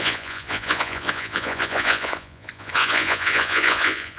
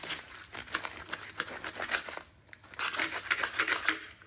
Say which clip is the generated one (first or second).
first